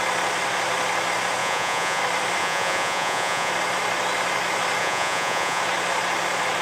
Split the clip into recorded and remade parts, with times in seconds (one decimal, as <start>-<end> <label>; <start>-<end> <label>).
0.0-1.4 recorded; 1.4-2.0 remade; 2.0-2.4 recorded; 2.4-3.5 remade; 3.5-4.8 recorded; 4.8-5.6 remade; 5.6-6.6 recorded